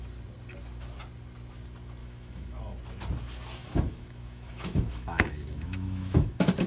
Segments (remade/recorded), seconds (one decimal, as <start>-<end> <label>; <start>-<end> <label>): 0.0-2.0 recorded; 2.0-2.6 remade; 2.6-3.6 recorded; 3.6-6.7 remade

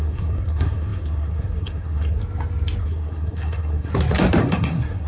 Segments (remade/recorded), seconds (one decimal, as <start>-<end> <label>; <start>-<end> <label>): 0.0-2.2 remade; 2.2-2.8 recorded; 2.8-3.9 remade; 3.9-4.4 recorded; 4.4-5.1 remade

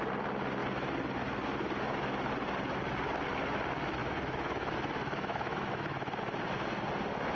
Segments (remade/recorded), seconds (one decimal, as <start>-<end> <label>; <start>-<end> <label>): 0.0-4.0 recorded; 4.0-6.2 remade; 6.2-7.4 recorded

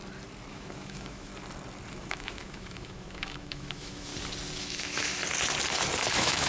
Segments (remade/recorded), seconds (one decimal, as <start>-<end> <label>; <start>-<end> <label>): 0.0-0.5 recorded; 0.5-1.3 remade; 1.3-1.9 recorded; 1.9-4.1 remade; 4.1-4.6 recorded; 4.6-5.1 remade; 5.1-6.1 recorded; 6.1-6.5 remade

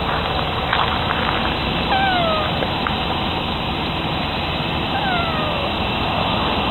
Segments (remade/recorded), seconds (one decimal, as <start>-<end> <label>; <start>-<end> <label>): 0.0-6.7 recorded

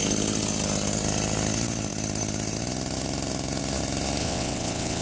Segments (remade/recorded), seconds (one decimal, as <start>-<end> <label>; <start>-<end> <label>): 0.0-4.2 recorded; 4.2-5.0 remade

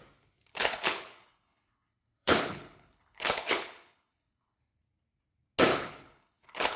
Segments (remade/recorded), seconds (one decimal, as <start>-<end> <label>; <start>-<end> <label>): 0.0-0.5 recorded; 0.5-4.6 remade; 4.6-5.7 recorded; 5.7-6.8 remade